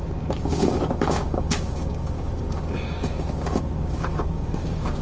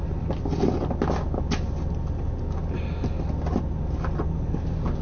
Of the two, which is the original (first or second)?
second